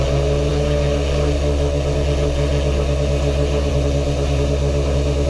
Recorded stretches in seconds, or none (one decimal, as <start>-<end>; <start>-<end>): 0.0-5.3